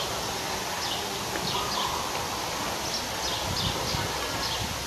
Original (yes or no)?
yes